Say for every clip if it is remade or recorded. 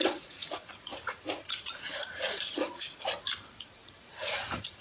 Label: remade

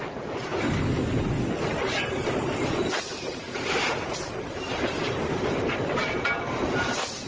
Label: recorded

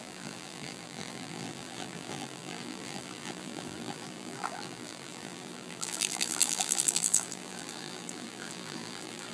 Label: remade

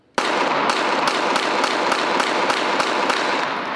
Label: recorded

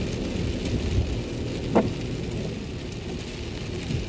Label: recorded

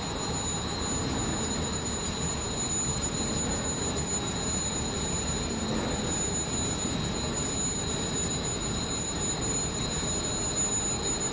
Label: recorded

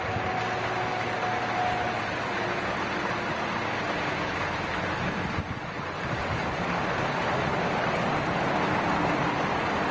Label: recorded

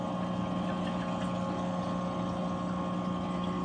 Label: recorded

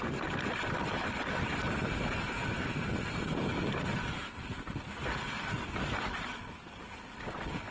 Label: recorded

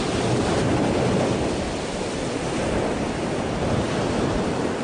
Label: recorded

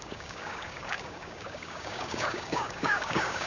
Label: remade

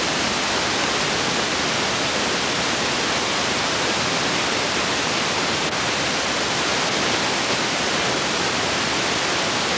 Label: recorded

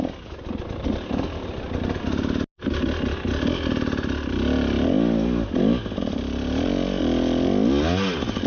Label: recorded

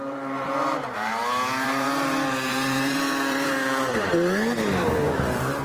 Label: remade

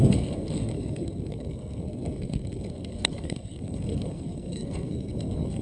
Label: remade